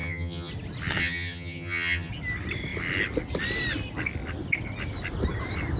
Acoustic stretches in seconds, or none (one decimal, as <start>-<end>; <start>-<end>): 0.5-1.0; 2.1-5.8